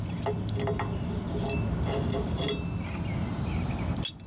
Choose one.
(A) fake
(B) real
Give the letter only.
B